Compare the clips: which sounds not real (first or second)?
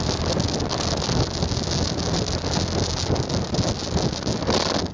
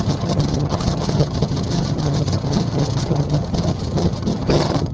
second